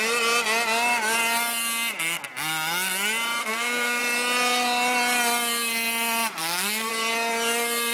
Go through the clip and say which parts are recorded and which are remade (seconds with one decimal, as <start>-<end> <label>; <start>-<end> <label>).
0.0-3.4 recorded; 3.4-4.0 remade; 4.0-6.4 recorded; 6.4-6.9 remade; 6.9-7.9 recorded

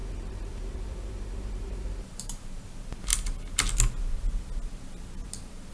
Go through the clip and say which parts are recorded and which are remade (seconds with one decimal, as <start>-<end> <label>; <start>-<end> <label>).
0.0-2.7 remade; 2.7-5.7 recorded

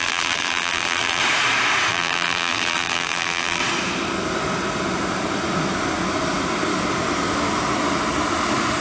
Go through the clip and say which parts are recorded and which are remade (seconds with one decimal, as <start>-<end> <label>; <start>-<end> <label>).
0.0-1.2 remade; 1.2-1.9 recorded; 1.9-3.6 remade; 3.6-8.8 recorded

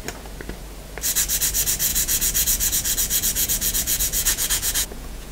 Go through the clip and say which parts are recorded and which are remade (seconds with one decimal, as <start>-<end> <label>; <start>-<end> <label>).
0.0-1.9 recorded; 1.9-5.3 remade